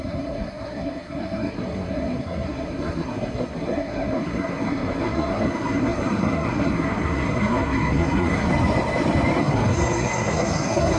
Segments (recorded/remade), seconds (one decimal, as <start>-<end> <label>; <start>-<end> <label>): 0.0-8.5 remade; 8.5-9.4 recorded; 9.4-11.0 remade